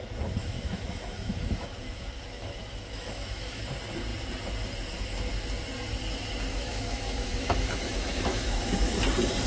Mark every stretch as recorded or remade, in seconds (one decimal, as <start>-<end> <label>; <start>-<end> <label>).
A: 0.0-0.4 recorded; 0.4-3.6 remade; 3.6-6.5 recorded; 6.5-9.0 remade; 9.0-9.5 recorded